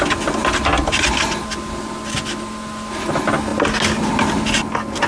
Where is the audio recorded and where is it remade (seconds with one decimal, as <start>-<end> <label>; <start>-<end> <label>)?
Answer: 0.0-5.1 recorded